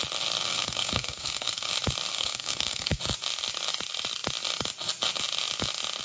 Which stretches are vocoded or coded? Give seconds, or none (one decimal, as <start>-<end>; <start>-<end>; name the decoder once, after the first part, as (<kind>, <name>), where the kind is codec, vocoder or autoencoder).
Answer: 0.5-1.7 (codec, SNAC); 2.1-3.0